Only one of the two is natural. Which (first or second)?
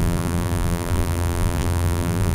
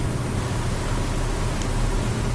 second